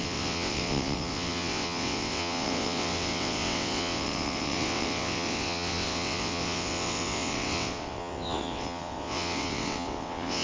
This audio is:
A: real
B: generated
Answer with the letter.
B